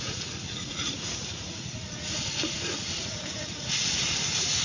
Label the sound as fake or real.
fake